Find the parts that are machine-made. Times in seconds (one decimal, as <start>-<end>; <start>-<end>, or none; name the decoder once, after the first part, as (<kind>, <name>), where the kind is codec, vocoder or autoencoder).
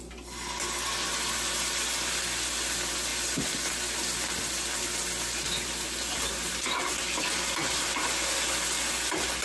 none